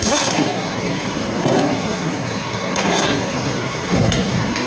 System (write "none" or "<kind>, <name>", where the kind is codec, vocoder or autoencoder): codec, SNAC